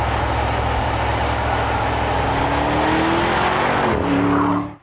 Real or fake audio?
real